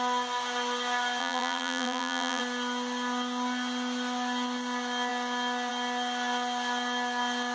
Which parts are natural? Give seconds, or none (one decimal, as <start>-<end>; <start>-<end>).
0.0-1.2; 2.4-7.5